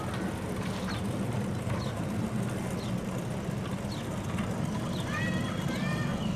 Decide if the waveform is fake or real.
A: real